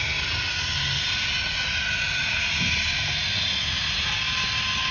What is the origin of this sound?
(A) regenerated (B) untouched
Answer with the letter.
B